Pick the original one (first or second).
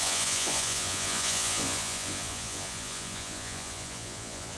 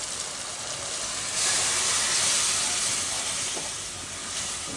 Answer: second